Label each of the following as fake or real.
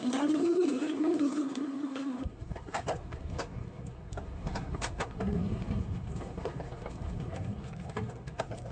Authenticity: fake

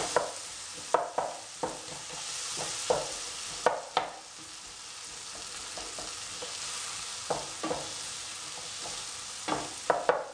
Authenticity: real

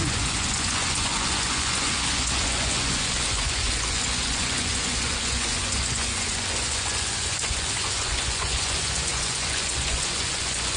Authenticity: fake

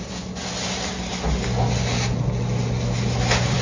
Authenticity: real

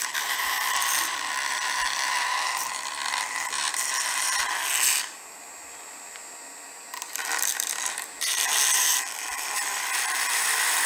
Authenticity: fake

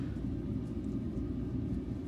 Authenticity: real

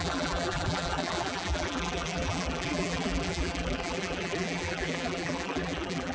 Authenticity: fake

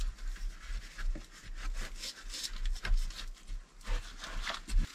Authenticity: real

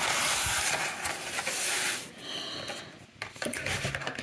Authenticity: real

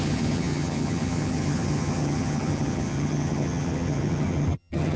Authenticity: fake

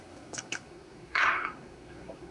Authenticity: fake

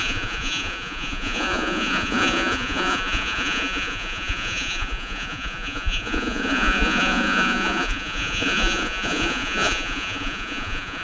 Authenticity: fake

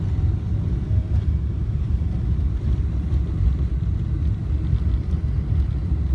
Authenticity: real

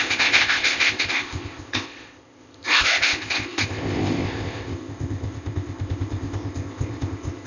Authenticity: fake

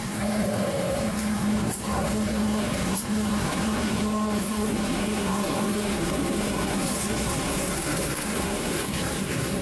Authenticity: fake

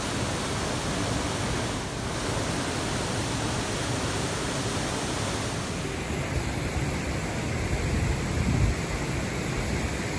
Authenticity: real